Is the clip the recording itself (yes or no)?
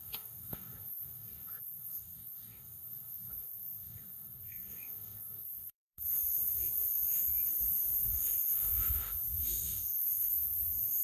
no